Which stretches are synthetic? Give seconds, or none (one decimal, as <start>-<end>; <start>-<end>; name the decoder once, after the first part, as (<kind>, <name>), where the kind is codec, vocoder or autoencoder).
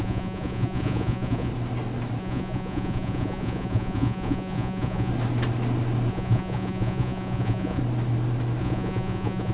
0.0-1.5 (vocoder, Vocos); 2.2-5.1; 6.1-7.8; 8.6-9.5